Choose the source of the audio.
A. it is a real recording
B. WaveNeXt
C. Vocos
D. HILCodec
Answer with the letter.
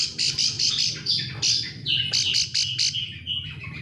A